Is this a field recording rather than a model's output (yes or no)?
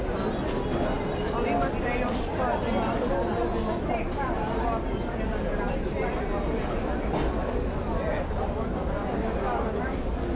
yes